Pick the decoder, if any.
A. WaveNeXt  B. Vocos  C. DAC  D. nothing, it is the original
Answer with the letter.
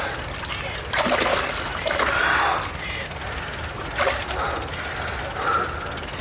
D